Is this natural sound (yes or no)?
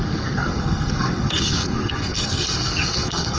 no